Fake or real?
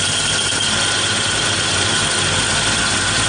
real